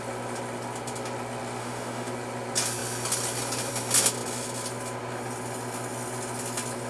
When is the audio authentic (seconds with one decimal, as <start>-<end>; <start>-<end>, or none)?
0.0-1.6; 2.1-6.9